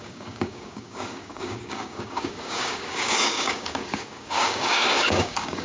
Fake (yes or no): yes